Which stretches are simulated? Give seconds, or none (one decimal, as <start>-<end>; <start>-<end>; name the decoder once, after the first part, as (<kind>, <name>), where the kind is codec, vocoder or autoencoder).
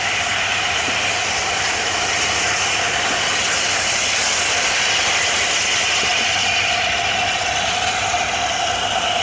none